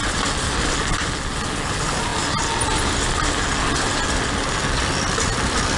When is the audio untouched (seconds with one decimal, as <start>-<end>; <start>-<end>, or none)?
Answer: 0.0-5.8